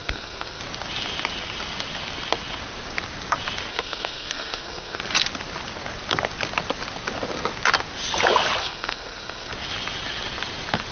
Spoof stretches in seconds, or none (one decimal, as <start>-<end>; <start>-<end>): 0.0-0.6; 3.7-5.0; 8.6-9.5